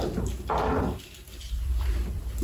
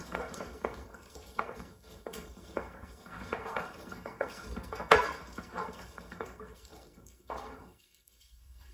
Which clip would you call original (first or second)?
first